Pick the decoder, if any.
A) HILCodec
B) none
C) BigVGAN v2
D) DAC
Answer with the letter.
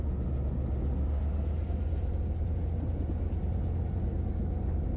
B